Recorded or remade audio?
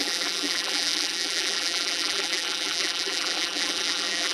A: remade